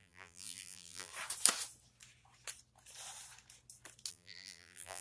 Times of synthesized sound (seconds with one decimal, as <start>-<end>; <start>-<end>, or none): 0.0-1.1; 4.1-5.0